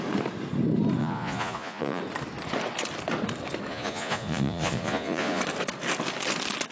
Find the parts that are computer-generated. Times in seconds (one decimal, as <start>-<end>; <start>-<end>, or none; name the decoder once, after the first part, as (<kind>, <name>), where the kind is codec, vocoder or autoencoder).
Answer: 1.0-2.0 (vocoder, Vocos); 3.7-5.4